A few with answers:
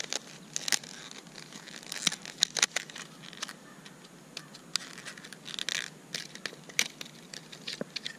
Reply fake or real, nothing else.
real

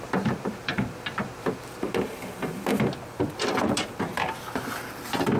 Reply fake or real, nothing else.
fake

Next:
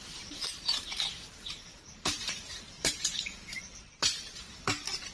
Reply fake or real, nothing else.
fake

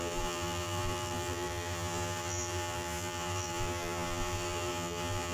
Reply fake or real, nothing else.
fake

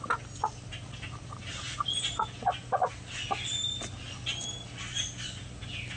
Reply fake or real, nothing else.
real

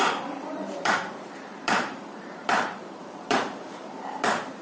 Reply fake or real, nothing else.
fake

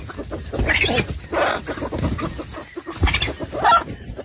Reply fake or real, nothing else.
real